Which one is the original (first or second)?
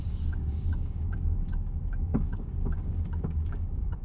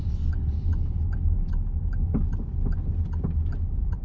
second